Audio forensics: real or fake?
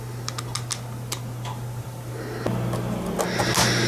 real